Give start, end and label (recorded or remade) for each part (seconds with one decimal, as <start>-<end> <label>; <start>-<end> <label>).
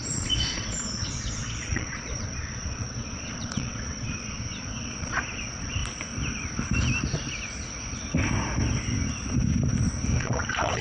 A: 0.0-5.8 remade; 5.8-10.2 recorded; 10.2-10.8 remade